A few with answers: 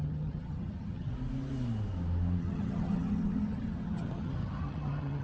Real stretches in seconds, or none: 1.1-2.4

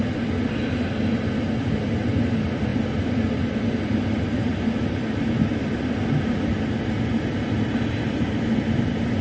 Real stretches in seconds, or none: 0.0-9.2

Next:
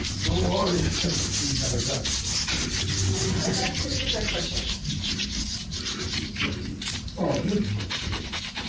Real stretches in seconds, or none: 0.0-3.9

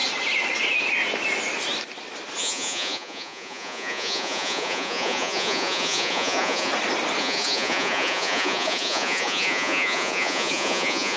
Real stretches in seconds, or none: 0.0-2.4; 6.7-7.2

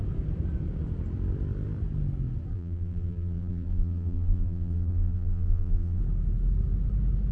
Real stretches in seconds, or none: 0.0-2.5; 6.0-7.3